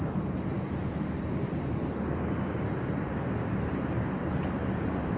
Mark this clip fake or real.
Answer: fake